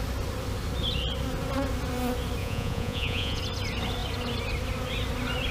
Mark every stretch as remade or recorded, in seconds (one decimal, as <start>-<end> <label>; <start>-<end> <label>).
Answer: 0.0-2.4 recorded; 2.4-3.4 remade; 3.4-5.5 recorded

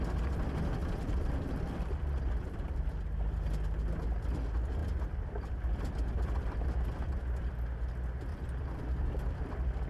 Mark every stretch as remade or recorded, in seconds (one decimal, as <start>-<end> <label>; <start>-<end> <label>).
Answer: 0.0-0.8 recorded; 0.8-2.7 remade; 2.7-4.8 recorded; 4.8-7.5 remade; 7.5-8.3 recorded; 8.3-9.2 remade; 9.2-9.9 recorded

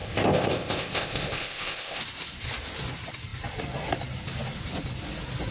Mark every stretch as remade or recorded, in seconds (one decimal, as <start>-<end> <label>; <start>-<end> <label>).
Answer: 0.0-2.0 remade; 2.0-5.5 recorded

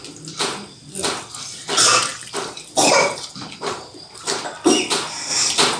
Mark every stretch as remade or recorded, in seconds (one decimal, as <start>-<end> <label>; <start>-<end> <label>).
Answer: 0.0-2.1 recorded; 2.1-4.4 remade; 4.4-5.8 recorded

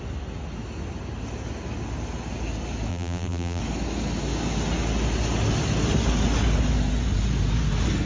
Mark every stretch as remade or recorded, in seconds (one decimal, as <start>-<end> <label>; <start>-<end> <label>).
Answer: 0.0-2.9 recorded; 2.9-3.6 remade; 3.6-8.1 recorded